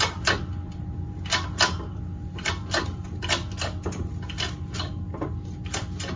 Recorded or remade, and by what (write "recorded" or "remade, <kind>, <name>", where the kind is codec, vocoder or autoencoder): recorded